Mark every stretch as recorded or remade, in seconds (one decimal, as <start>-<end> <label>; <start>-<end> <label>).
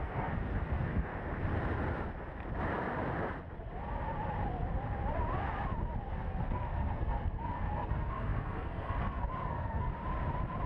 0.0-1.1 remade; 1.1-6.1 recorded; 6.1-9.9 remade; 9.9-10.7 recorded